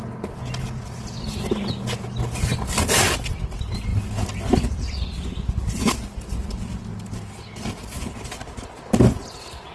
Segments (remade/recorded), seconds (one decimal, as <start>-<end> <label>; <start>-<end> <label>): 0.0-9.7 recorded